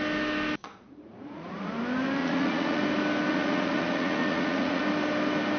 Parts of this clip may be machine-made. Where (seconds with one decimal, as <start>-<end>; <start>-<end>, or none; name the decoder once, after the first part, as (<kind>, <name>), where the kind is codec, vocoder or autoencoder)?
0.6-1.7 (vocoder, Vocos); 2.2-2.8; 3.3-4.8